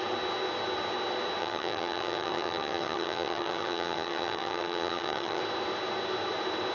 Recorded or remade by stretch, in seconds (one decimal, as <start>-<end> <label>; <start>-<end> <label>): 0.0-1.4 recorded; 1.4-5.4 remade; 5.4-6.7 recorded

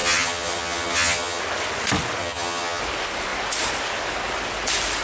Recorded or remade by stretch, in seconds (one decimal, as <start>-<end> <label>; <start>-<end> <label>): 0.0-1.4 remade; 1.4-2.2 recorded; 2.2-2.8 remade; 2.8-5.0 recorded

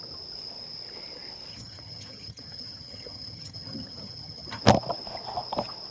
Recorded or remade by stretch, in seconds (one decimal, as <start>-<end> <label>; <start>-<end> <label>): 0.0-1.5 recorded; 1.5-4.6 remade; 4.6-5.9 recorded